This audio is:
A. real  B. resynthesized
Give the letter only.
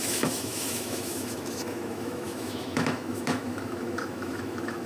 B